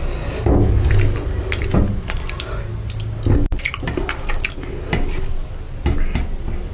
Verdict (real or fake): real